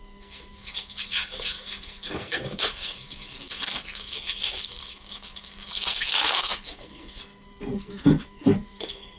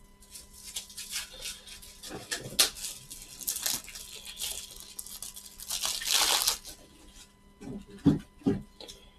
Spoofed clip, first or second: first